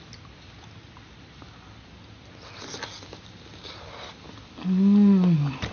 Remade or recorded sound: recorded